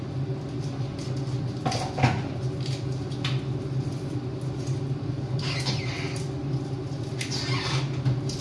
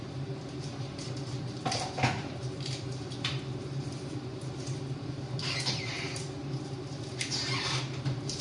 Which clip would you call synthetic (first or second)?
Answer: second